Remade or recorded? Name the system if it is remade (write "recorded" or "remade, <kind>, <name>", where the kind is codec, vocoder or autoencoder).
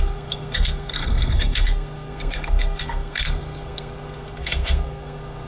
remade, codec, SNAC